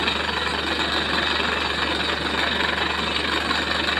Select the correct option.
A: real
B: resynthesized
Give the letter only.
A